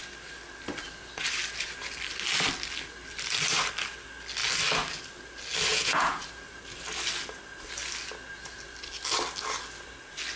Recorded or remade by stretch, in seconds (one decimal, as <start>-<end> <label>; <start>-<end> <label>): 0.0-5.7 recorded; 5.7-6.2 remade; 6.2-10.4 recorded